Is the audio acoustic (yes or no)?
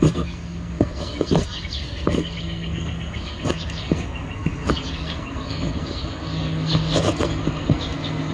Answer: no